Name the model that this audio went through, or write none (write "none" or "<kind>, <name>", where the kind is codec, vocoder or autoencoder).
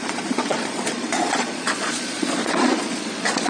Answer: vocoder, Vocos